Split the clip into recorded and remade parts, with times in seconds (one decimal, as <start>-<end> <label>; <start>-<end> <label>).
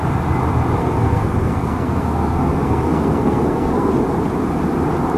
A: 0.0-0.8 recorded; 0.8-3.9 remade; 3.9-5.2 recorded